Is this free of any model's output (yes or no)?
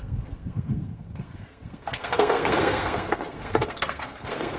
no